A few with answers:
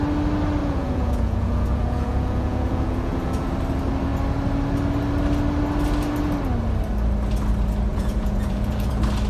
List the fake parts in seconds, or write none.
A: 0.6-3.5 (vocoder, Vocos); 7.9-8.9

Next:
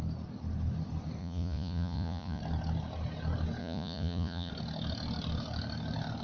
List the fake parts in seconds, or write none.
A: 1.2-2.4 (vocoder, Vocos); 3.6-4.5

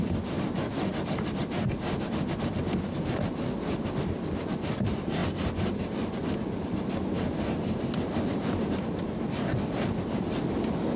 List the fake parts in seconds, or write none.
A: none

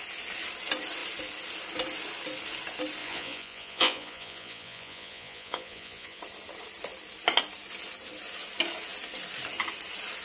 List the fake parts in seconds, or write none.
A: 3.0-6.2 (vocoder, Vocos)

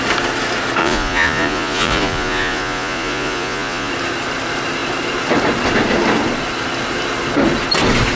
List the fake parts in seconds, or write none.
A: 0.8-3.9 (vocoder, Vocos)

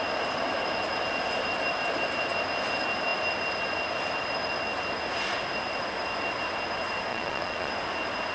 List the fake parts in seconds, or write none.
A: 7.1-7.7 (vocoder, Vocos)

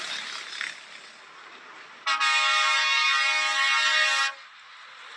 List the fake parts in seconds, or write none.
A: none